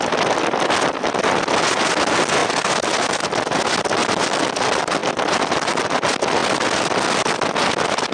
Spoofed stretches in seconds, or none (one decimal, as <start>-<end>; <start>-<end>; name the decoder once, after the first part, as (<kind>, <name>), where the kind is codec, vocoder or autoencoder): none